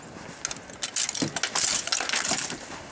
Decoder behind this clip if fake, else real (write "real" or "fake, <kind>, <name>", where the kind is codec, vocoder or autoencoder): real